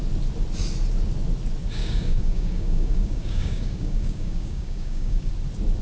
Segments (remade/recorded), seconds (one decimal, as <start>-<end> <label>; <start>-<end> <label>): 0.0-1.8 recorded; 1.8-5.3 remade; 5.3-5.8 recorded